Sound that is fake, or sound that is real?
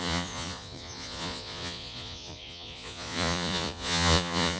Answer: fake